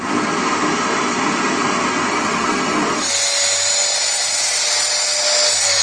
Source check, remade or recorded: recorded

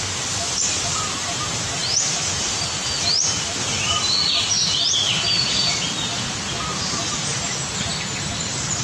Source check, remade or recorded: remade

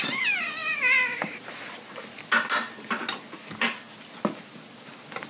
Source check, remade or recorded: recorded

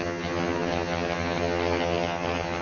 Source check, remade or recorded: remade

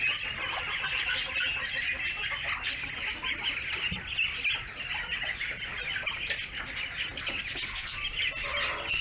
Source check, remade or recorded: recorded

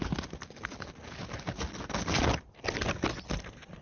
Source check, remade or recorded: recorded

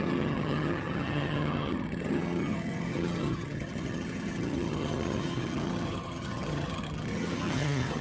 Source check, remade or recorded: remade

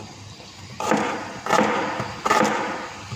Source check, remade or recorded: recorded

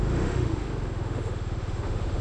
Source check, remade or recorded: remade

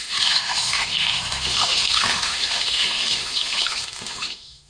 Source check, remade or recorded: remade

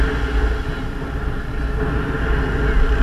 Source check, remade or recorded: recorded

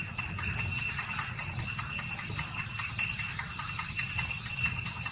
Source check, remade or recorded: recorded